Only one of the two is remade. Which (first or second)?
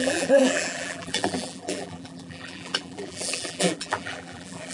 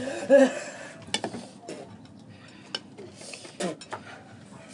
first